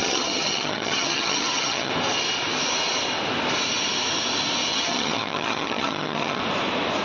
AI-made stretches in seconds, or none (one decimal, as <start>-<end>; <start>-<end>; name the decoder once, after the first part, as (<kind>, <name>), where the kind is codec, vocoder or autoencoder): 0.0-1.9 (vocoder, HiFi-GAN); 4.7-6.4